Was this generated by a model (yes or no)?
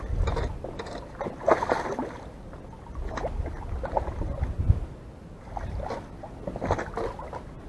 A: no